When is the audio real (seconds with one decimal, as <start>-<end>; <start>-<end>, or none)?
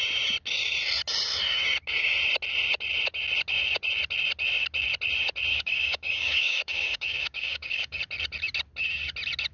0.0-5.5; 8.0-9.5